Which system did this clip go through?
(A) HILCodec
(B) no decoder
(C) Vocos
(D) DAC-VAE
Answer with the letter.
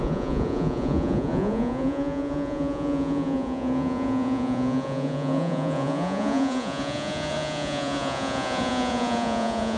C